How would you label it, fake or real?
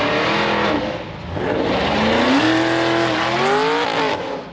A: real